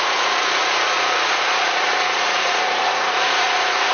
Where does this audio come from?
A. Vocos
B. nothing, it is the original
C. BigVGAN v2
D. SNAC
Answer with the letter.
A